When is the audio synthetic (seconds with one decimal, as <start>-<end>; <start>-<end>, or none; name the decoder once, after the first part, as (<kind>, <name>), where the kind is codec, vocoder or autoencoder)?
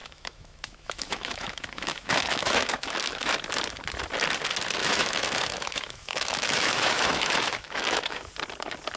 0.0-3.3 (autoencoder, DAC-VAE); 4.8-8.3